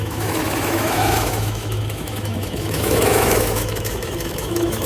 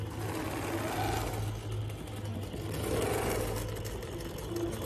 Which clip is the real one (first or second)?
second